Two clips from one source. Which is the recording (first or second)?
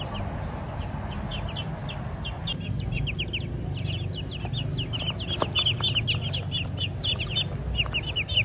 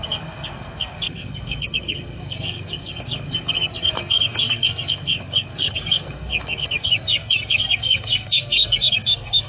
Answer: first